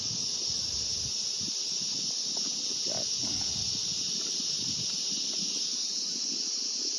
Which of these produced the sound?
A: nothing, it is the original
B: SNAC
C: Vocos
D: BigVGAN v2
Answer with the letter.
A